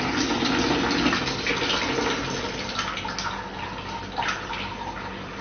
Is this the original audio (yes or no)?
yes